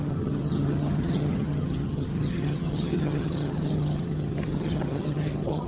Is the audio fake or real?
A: fake